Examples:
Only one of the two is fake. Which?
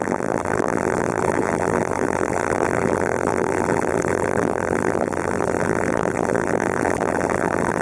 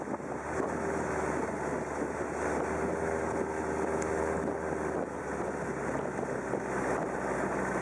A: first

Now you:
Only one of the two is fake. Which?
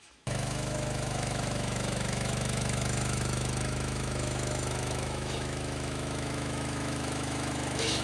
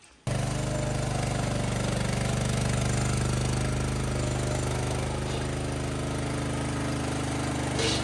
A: first